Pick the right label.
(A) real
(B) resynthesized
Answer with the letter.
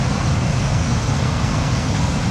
B